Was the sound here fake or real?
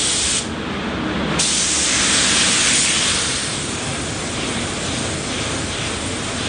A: real